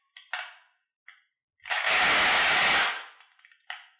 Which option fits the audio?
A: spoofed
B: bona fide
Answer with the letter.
B